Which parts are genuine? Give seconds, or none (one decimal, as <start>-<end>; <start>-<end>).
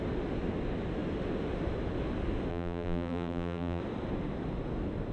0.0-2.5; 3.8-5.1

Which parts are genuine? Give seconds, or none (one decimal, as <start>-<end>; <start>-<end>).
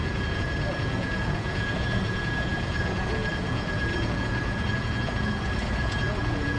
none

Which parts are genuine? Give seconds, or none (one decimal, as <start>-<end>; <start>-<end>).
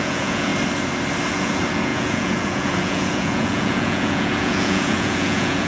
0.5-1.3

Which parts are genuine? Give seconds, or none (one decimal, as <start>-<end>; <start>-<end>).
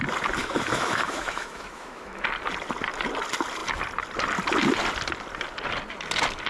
0.0-0.4; 2.2-6.5